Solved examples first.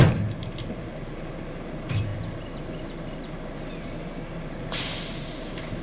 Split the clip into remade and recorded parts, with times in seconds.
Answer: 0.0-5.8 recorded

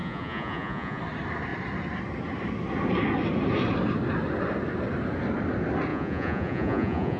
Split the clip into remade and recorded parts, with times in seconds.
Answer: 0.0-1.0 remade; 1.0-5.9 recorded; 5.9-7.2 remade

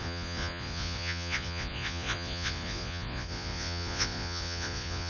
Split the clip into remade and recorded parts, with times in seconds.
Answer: 0.0-5.1 remade

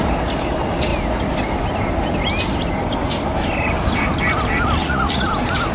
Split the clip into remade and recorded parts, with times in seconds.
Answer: 0.0-4.8 recorded; 4.8-5.3 remade; 5.3-5.7 recorded

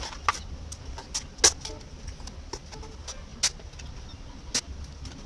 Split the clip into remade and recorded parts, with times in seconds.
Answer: 0.0-5.3 recorded

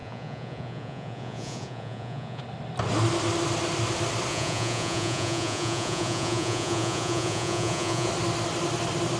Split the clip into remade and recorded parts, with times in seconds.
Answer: 0.0-2.4 remade; 2.4-4.3 recorded; 4.3-8.1 remade; 8.1-9.2 recorded